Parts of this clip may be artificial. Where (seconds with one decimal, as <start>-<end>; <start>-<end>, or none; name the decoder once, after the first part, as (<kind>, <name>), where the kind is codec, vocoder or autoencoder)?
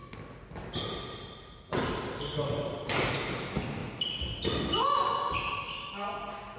none